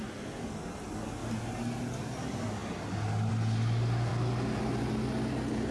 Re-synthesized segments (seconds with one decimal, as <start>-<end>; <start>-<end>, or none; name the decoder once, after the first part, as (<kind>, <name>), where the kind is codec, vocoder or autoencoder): none